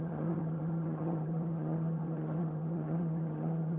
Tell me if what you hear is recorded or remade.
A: remade